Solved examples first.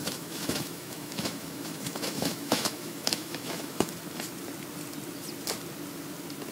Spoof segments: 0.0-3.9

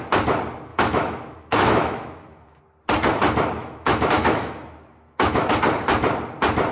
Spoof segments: 0.7-2.6; 3.6-5.5

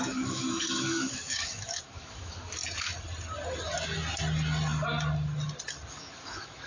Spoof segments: 0.0-2.6; 5.9-6.7

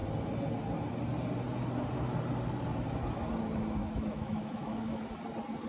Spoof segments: 3.8-5.1

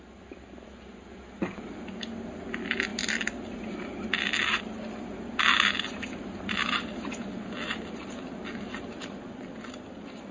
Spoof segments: none